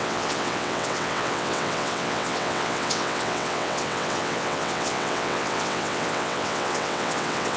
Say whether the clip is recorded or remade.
remade